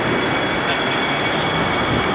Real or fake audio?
real